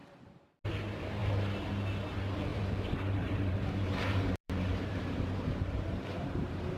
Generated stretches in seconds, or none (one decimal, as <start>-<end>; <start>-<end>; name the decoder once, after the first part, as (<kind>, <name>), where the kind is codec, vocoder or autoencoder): 2.5-6.8 (vocoder, BigVGAN v2)